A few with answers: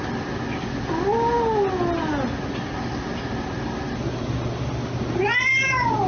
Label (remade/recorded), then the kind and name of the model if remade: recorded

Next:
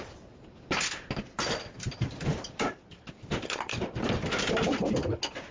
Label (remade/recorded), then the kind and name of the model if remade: recorded